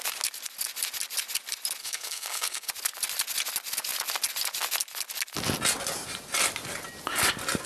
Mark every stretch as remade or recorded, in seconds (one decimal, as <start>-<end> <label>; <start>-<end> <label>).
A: 0.0-1.8 recorded; 1.8-2.7 remade; 2.7-7.7 recorded